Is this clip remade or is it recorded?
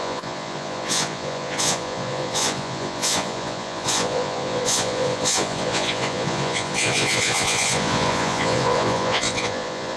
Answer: remade